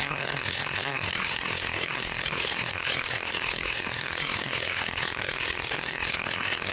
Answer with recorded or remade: remade